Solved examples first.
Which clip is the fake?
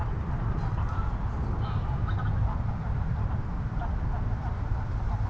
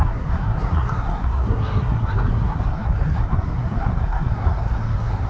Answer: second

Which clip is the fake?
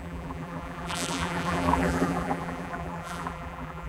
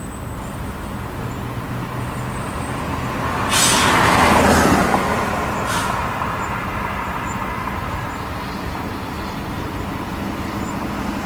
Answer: first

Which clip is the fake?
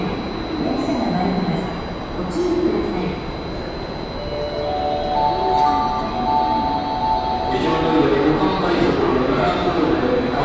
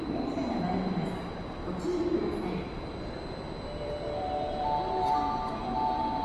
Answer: second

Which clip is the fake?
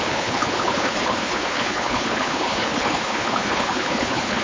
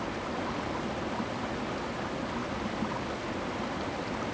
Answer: first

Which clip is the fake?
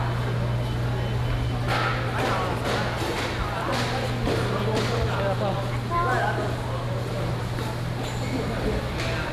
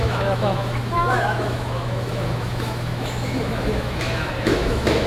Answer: second